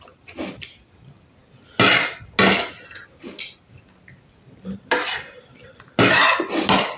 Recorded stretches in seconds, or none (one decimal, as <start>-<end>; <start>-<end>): 0.0-7.0